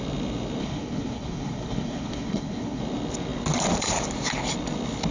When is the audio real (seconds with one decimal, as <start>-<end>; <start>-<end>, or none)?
0.0-0.6; 2.8-5.1

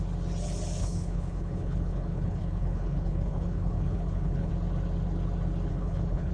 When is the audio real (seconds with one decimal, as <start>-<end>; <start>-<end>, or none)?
0.0-0.8; 4.5-5.7